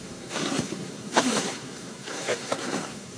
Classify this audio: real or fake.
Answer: fake